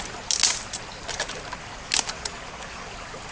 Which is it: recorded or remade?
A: recorded